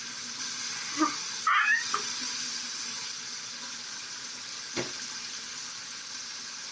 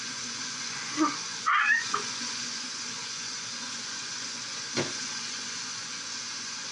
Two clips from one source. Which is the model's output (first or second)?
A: second